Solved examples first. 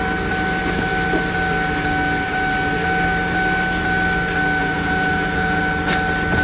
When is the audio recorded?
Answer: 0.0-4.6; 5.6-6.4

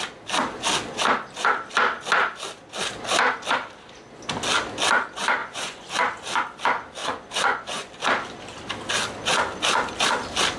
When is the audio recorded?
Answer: 0.0-5.4; 6.0-7.0; 7.9-10.6